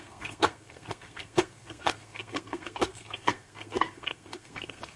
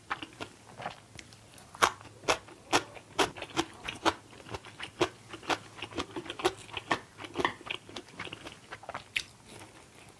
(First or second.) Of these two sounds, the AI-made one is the first